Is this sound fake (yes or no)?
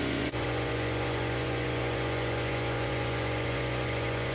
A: yes